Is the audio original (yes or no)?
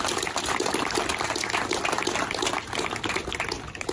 yes